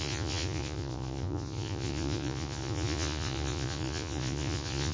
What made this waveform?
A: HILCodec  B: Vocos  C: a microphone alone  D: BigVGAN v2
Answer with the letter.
B